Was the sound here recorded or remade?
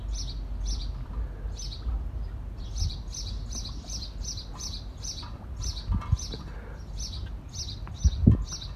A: recorded